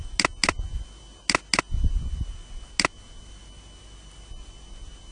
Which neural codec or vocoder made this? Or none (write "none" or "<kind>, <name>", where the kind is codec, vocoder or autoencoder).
none